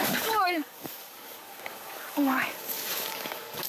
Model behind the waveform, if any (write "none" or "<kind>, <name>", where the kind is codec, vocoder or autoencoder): codec, DAC